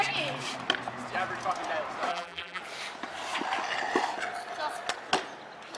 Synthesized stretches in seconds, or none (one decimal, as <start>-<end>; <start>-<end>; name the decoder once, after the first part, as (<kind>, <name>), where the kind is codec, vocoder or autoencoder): 2.1-2.6 (vocoder, BigVGAN v2)

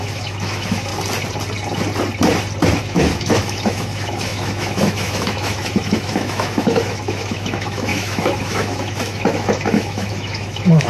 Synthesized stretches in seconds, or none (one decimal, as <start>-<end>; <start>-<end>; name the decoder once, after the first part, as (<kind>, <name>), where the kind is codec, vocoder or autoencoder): 0.0-0.9 (autoencoder, DAC-VAE); 2.8-10.9

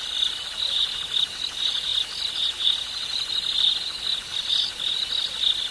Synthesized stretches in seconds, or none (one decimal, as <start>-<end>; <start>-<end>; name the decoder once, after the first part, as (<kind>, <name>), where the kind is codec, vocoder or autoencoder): none

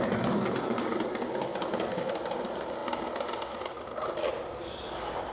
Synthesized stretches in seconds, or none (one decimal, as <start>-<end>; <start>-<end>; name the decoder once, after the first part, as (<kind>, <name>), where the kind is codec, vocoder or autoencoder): none

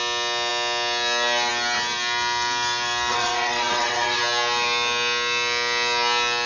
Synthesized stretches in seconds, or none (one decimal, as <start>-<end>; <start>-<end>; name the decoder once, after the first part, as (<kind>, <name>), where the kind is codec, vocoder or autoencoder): 3.1-4.2 (vocoder, WaveNeXt)

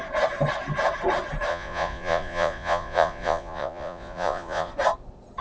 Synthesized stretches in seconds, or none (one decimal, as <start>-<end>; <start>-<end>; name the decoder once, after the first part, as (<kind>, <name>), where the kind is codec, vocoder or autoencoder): 1.5-4.7 (vocoder, Vocos)

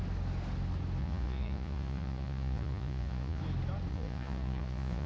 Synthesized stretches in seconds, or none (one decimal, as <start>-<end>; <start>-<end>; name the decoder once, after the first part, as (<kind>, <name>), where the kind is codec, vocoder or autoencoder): 1.0-3.4 (vocoder, Vocos); 3.9-5.1